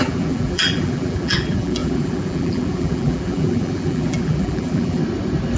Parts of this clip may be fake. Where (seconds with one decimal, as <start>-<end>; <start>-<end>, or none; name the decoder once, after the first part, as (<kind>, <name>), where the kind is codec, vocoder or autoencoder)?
0.0-5.0 (vocoder, BigVGAN v2)